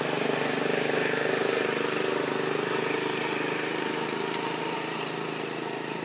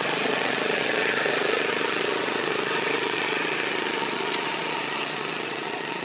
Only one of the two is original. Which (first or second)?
first